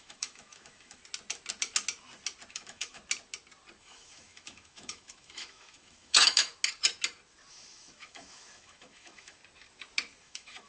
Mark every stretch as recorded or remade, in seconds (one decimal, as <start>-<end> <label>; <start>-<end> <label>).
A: 0.0-1.0 remade; 1.0-2.5 recorded; 2.5-3.0 remade; 3.0-3.8 recorded; 3.8-6.5 remade; 6.5-7.5 recorded; 7.5-9.4 remade; 9.4-10.2 recorded; 10.2-10.7 remade